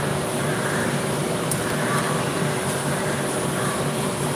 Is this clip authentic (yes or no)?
no